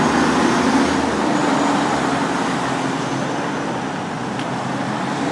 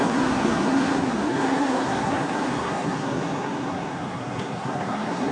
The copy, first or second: second